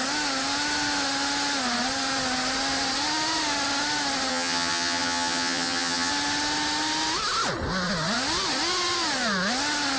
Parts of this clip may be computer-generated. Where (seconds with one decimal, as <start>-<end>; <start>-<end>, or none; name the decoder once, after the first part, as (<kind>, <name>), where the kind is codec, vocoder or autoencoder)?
4.3-6.1 (vocoder, HiFi-GAN)